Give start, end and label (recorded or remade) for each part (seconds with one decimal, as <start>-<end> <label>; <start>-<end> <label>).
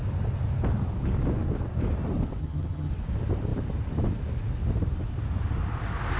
0.0-2.4 recorded; 2.4-2.9 remade; 2.9-6.2 recorded